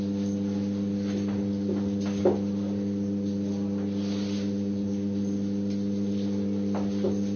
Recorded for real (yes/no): yes